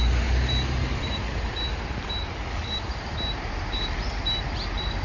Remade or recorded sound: recorded